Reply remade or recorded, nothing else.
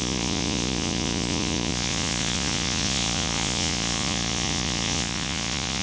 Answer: remade